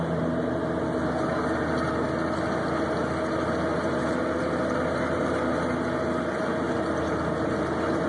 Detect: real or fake real